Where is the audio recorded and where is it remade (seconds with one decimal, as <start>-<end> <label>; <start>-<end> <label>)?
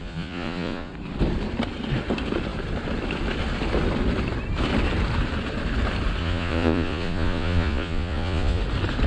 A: 0.0-0.9 remade; 0.9-6.2 recorded; 6.2-8.6 remade; 8.6-9.1 recorded